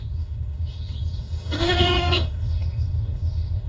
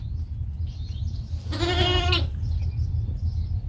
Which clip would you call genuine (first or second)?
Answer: second